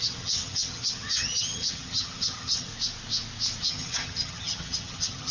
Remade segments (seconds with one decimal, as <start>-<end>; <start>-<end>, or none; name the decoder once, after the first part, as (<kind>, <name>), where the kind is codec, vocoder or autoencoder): 0.0-2.7 (vocoder, HiFi-GAN); 3.6-5.3